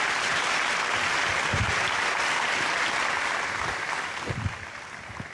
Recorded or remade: recorded